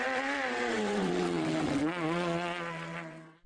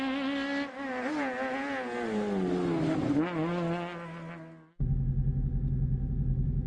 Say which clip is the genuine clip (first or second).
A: second